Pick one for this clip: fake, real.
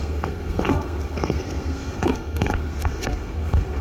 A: fake